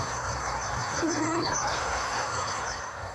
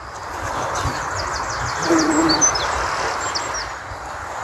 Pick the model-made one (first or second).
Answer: first